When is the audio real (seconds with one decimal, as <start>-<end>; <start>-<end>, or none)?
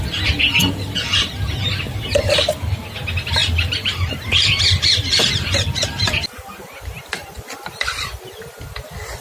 0.0-3.4; 8.2-9.2